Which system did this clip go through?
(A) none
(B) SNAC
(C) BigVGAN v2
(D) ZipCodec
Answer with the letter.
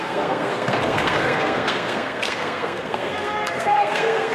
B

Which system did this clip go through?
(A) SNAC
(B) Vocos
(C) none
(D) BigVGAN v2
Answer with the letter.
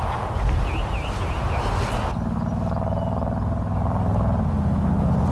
C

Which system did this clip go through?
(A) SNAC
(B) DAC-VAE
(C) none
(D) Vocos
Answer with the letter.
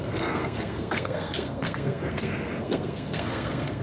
A